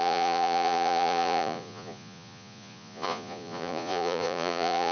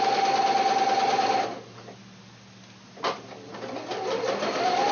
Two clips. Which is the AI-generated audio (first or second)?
first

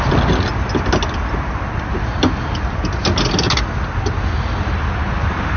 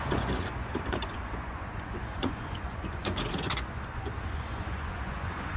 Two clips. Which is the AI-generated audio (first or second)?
second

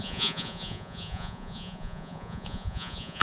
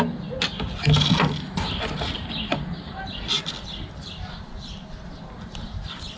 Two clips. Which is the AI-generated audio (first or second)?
first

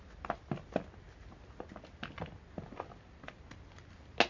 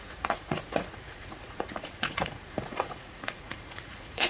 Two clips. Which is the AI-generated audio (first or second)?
second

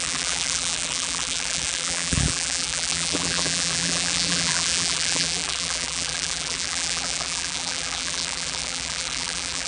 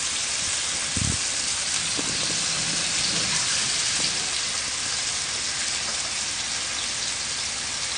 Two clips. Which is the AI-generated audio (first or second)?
first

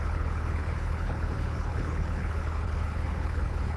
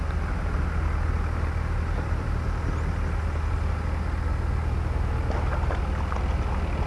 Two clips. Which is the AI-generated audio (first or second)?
first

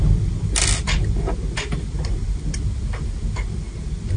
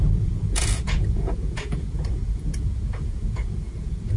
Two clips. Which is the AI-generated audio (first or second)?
second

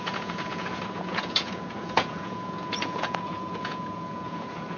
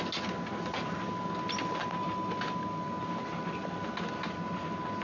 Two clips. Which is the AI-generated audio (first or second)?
first